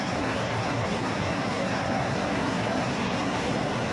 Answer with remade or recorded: remade